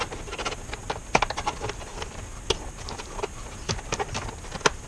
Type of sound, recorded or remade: recorded